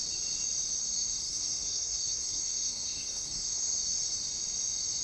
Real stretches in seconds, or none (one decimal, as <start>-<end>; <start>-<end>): 0.0-0.8; 3.8-5.0